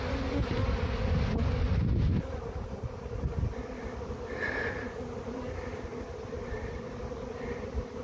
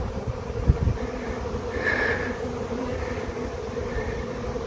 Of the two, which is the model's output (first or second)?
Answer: first